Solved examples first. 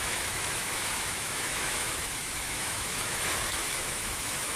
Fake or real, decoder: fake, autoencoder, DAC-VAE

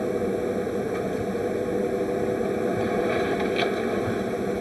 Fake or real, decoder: real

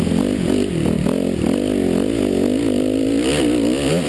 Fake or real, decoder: real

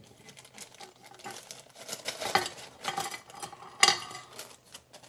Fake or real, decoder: real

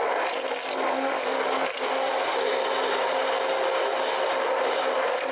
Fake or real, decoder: real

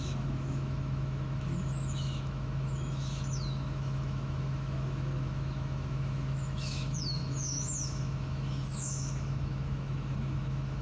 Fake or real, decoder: fake, autoencoder, DAC-VAE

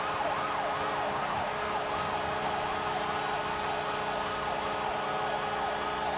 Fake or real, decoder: real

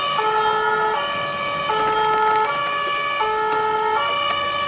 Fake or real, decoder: real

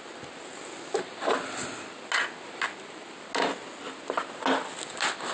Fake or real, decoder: real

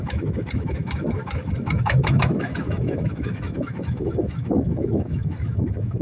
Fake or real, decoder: fake, autoencoder, DAC-VAE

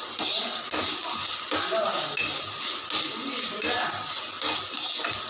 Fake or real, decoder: real